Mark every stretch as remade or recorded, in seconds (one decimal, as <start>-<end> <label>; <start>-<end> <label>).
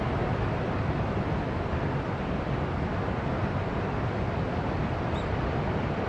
0.0-6.1 recorded